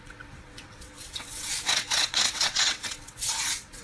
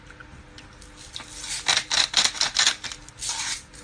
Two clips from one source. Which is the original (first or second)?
second